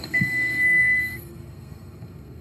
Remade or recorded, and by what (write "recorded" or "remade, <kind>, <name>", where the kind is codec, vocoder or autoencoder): remade, codec, SNAC